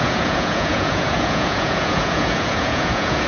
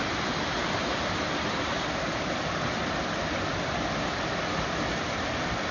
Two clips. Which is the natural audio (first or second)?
second